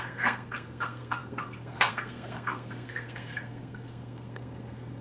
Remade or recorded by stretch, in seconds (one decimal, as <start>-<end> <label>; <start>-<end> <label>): 0.0-5.0 remade